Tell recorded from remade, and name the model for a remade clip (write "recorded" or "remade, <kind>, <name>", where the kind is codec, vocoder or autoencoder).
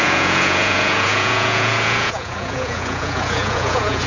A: remade, vocoder, Vocos